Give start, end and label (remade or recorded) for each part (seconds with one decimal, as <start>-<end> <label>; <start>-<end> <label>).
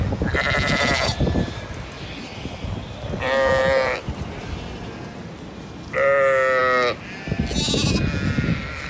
0.0-8.9 recorded